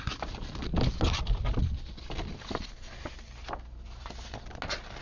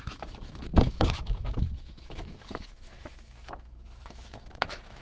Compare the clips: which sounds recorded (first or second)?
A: first